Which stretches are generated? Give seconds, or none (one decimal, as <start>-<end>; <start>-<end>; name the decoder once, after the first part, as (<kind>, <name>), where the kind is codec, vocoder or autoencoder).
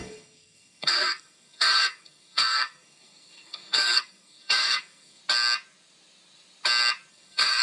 0.0-5.2 (codec, SNAC); 7.1-7.6